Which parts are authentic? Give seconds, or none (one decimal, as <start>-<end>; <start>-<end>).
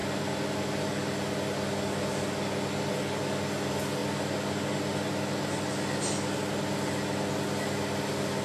0.0-8.4